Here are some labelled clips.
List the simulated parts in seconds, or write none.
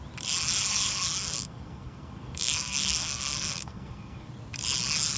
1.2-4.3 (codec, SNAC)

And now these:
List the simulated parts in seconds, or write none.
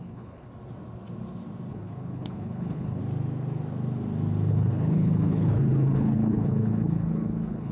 0.0-0.5 (codec, HILCodec); 1.7-3.0; 4.5-7.7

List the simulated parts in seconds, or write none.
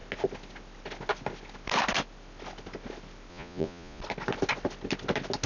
3.3-4.0 (vocoder, Vocos)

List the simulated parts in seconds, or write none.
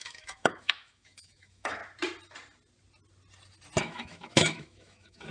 0.0-1.8 (autoencoder, DAC-VAE); 3.8-5.3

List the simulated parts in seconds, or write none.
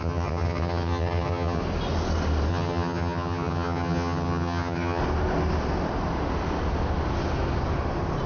0.0-1.6 (vocoder, HiFi-GAN); 2.5-5.0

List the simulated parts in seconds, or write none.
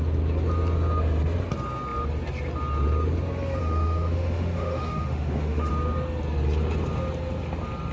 3.6-5.7 (autoencoder, DAC-VAE)